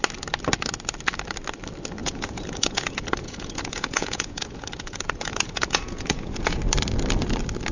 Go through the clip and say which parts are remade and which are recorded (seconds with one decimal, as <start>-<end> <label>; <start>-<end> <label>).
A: 0.0-2.0 recorded; 2.0-6.6 remade; 6.6-7.7 recorded